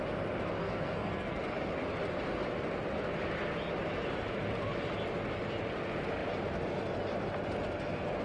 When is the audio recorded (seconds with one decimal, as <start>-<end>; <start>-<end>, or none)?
0.0-0.6; 1.4-8.2